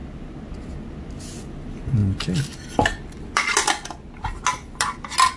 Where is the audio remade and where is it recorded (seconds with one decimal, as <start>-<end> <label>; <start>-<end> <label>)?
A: 0.0-5.4 recorded